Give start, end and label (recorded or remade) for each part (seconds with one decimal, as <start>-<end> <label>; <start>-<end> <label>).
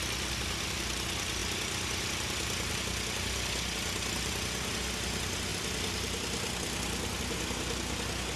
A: 0.0-8.4 recorded